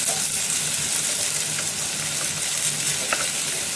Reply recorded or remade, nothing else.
recorded